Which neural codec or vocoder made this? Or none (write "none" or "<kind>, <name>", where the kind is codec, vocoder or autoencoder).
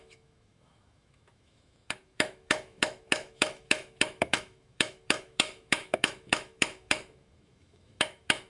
autoencoder, DAC-VAE